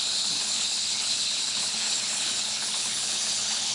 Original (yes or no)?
no